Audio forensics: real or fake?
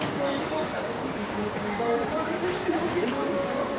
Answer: fake